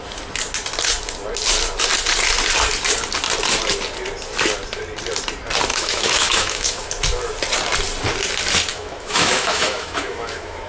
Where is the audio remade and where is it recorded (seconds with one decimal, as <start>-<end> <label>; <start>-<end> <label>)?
0.0-5.7 recorded; 5.7-6.9 remade; 6.9-8.7 recorded; 8.7-10.7 remade